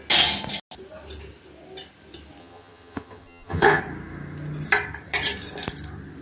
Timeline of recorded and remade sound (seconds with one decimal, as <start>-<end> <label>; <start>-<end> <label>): 0.0-2.4 recorded; 2.4-3.8 remade; 3.8-6.2 recorded